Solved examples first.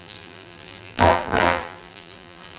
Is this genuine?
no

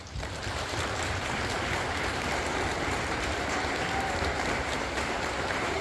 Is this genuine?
no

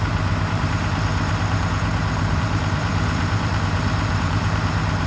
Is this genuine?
no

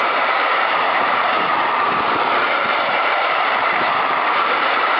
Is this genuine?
no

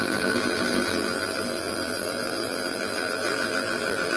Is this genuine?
no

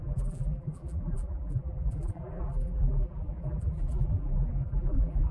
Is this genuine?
no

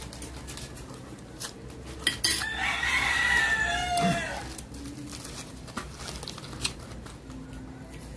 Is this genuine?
yes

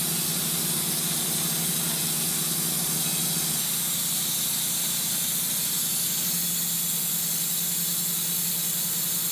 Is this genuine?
yes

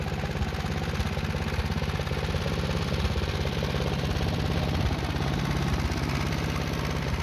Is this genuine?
yes